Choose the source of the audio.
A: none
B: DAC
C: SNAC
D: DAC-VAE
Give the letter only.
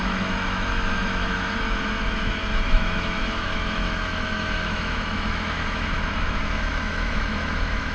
D